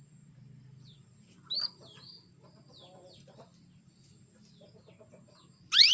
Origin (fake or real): real